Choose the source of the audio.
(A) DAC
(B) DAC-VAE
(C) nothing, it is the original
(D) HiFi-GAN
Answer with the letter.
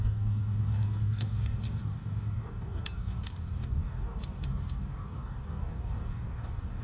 A